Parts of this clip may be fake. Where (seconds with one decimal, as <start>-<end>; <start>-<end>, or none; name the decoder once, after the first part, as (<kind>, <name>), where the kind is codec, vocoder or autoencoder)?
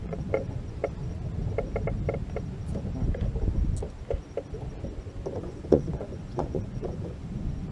0.0-0.8 (vocoder, Vocos); 5.4-7.7